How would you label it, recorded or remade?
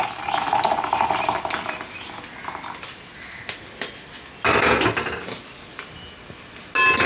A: recorded